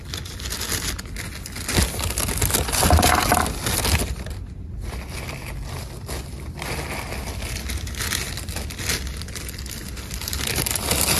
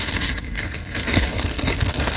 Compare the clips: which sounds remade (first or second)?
second